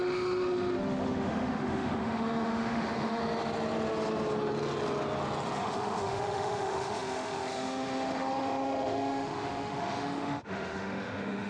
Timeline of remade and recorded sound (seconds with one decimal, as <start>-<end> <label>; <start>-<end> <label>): 0.0-3.2 remade; 3.2-5.6 recorded; 5.6-11.5 remade